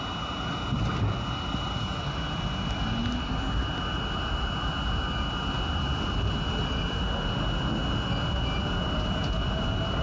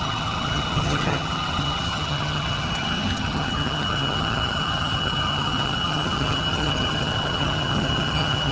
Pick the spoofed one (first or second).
second